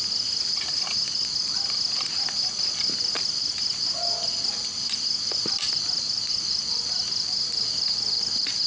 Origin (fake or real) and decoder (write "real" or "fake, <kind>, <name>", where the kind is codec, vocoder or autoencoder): real